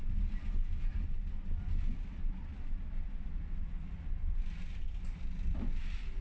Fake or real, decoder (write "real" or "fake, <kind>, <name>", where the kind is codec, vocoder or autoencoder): real